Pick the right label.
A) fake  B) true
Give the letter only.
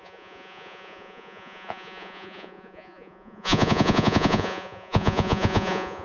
A